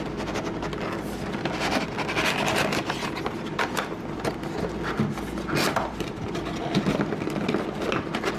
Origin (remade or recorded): recorded